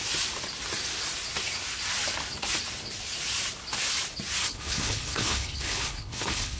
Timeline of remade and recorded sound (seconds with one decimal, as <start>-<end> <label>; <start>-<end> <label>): 0.0-4.4 recorded; 4.4-6.6 remade